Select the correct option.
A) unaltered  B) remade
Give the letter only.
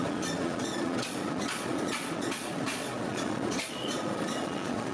B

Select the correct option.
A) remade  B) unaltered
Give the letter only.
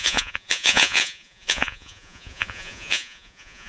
A